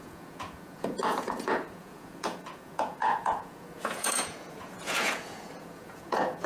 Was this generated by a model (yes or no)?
yes